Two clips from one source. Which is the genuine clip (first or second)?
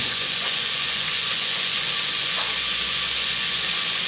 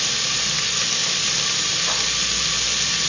second